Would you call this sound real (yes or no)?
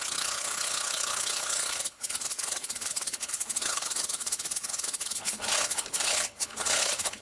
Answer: no